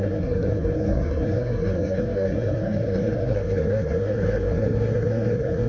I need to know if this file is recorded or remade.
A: remade